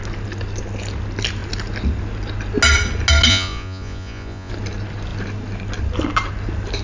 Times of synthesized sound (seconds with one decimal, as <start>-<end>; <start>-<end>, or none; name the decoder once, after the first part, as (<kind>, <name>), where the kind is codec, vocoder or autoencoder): 3.3-4.5 (vocoder, Vocos)